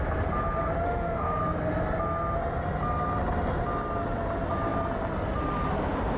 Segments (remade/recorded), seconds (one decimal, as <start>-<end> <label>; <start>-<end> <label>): 0.0-0.8 recorded; 0.8-1.4 remade; 1.4-6.2 recorded